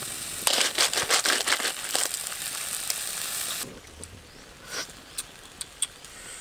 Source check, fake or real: real